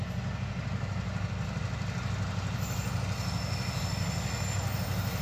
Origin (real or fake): real